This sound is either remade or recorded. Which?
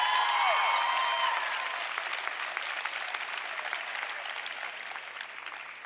recorded